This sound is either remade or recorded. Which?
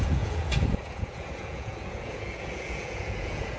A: remade